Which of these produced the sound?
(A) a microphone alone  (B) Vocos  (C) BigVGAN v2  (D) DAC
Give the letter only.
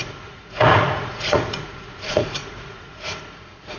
B